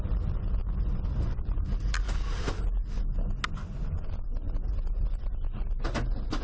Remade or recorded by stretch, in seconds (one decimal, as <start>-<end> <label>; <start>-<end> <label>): 0.0-4.4 recorded; 4.4-5.0 remade; 5.0-6.4 recorded